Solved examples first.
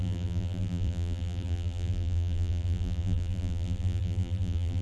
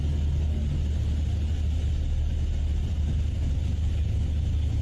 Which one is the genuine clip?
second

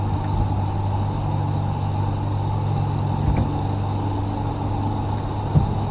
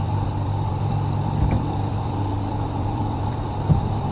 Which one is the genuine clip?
first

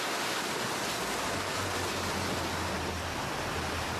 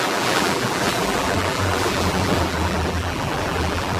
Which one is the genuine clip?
first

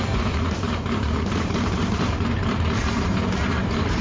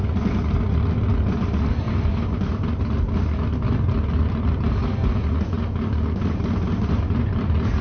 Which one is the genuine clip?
second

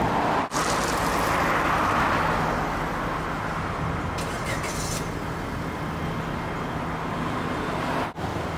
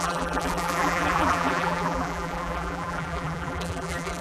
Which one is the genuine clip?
first